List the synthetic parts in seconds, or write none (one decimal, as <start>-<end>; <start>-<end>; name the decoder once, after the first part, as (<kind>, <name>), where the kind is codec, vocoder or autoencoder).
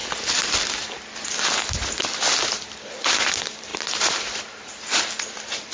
2.9-5.7 (vocoder, BigVGAN v2)